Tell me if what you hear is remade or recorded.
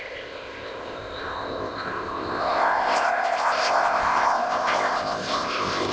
remade